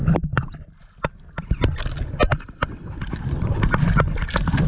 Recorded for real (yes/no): yes